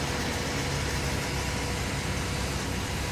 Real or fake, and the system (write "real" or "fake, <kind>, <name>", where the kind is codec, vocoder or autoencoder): real